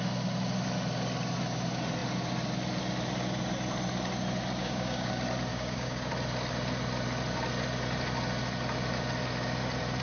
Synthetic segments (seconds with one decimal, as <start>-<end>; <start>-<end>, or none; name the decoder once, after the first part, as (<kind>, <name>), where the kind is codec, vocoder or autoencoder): 4.6-5.1 (codec, DAC); 5.5-6.1